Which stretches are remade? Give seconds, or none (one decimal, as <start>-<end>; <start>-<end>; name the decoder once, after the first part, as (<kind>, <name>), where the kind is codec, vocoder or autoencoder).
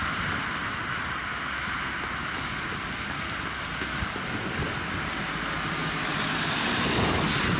none